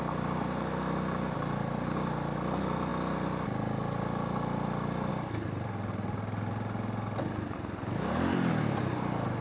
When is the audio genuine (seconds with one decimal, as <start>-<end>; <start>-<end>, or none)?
0.0-9.4